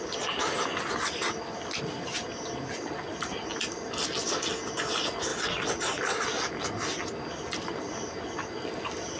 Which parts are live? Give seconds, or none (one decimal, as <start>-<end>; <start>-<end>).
0.0-9.2